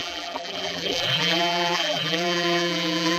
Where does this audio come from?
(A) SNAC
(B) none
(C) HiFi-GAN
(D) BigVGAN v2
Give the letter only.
D